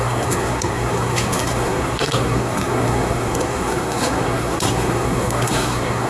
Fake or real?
fake